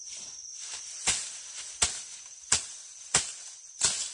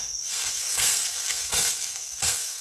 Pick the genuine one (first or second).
first